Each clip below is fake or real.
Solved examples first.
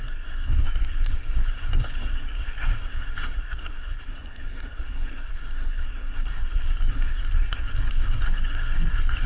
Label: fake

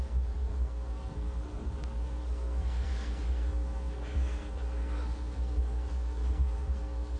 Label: fake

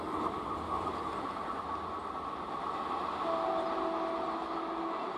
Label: real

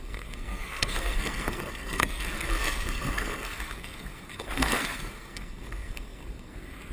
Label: fake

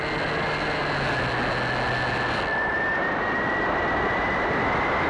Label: real